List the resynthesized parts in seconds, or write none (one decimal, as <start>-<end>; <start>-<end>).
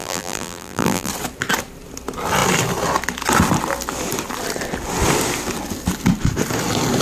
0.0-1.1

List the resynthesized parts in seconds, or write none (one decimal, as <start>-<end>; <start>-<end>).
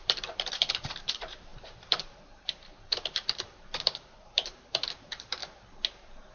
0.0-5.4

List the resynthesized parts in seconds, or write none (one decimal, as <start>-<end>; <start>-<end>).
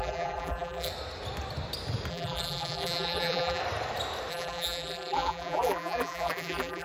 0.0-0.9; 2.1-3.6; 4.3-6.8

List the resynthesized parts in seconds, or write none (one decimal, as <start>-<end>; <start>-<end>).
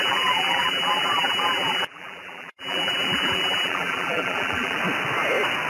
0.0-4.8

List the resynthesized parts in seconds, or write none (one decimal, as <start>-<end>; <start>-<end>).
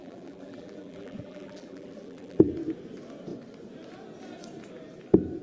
0.0-2.5